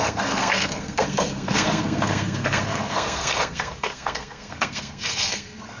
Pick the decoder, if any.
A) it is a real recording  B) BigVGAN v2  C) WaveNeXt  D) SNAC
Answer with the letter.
D